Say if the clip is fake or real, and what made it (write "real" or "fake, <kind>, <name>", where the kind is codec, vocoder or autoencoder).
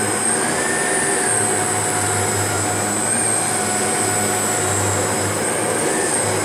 real